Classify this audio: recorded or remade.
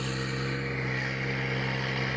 recorded